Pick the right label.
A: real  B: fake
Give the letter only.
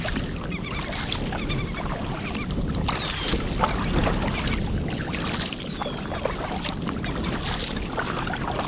A